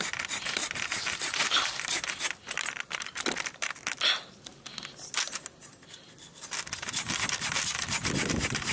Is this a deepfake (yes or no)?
no